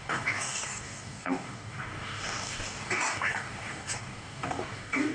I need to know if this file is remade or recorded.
remade